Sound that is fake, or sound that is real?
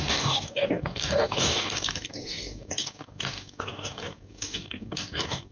fake